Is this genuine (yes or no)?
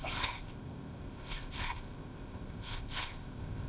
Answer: no